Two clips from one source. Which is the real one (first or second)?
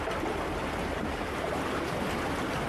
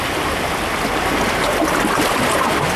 second